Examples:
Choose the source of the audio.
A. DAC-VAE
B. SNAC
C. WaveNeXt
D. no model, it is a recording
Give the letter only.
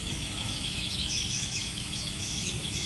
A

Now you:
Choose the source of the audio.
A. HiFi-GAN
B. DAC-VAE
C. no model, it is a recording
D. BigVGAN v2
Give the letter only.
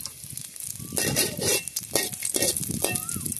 C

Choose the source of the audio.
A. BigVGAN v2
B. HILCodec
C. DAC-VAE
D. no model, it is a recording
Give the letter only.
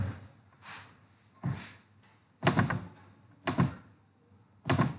D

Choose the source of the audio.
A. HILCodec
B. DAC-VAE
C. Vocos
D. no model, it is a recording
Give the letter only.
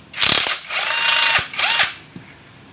D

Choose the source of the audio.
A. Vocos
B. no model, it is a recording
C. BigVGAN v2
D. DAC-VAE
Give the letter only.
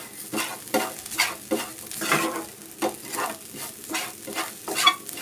B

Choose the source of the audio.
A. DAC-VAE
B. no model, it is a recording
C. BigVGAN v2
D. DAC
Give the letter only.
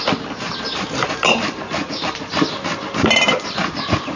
B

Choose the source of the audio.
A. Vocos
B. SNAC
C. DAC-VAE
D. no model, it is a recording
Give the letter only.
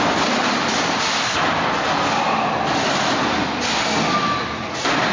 D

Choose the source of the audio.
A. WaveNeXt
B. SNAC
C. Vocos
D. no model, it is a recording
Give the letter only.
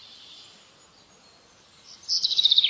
D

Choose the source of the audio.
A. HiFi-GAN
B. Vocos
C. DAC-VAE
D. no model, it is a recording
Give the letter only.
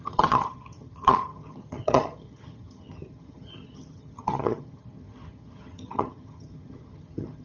A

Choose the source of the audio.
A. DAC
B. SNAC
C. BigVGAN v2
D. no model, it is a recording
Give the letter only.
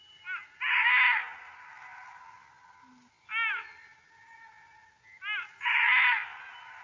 D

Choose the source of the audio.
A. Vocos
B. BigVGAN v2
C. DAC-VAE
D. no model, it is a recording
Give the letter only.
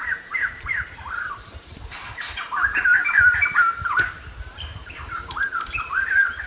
B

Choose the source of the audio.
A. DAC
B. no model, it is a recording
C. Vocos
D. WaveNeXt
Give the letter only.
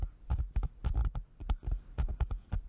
B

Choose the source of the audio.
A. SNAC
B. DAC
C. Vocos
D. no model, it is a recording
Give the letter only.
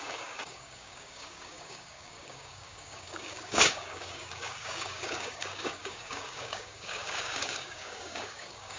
B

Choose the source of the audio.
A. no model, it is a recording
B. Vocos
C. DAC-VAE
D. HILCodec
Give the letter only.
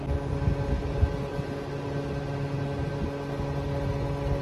A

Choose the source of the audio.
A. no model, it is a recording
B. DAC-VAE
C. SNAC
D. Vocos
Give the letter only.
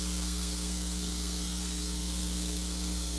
C